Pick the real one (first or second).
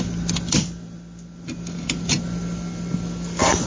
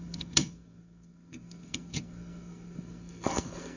first